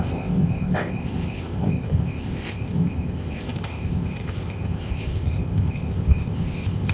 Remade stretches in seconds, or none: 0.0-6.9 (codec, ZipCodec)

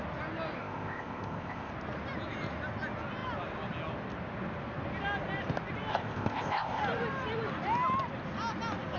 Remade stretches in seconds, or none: 0.6-1.7 (codec, ZipCodec); 5.9-6.8

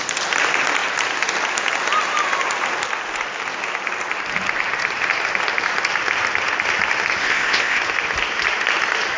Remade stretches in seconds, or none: 7.2-7.8 (codec, ZipCodec)

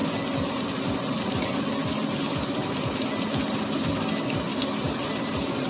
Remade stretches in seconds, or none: none

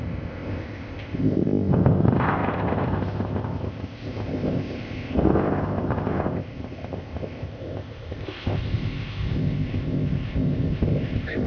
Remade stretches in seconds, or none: 0.0-11.5 (codec, ZipCodec)